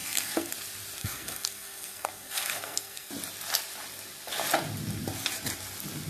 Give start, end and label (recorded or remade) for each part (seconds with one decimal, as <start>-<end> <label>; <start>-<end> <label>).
0.0-0.5 remade; 0.5-1.0 recorded; 1.0-3.1 remade; 3.1-6.1 recorded